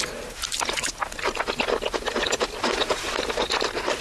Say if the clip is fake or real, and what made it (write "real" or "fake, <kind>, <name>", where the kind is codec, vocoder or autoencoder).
real